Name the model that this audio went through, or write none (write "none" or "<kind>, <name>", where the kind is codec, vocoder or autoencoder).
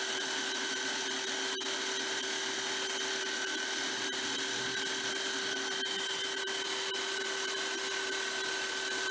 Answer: none